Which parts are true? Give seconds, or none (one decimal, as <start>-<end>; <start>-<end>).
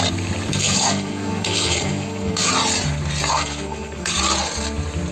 0.0-0.5; 2.5-3.3; 4.1-5.1